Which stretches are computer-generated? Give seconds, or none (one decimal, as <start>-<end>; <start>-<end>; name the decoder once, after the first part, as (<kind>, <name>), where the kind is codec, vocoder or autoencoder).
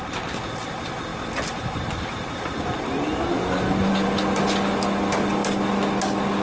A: none